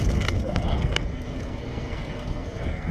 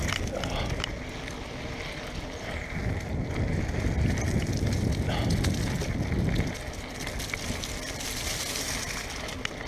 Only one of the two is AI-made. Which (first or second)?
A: first